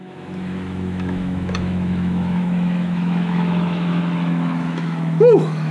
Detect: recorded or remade remade